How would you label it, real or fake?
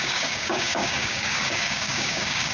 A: fake